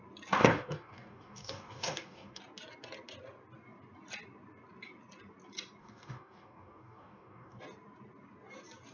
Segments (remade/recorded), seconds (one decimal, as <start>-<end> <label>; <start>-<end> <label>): 0.0-0.4 recorded; 0.4-2.4 remade; 2.4-5.8 recorded; 5.8-7.6 remade; 7.6-8.9 recorded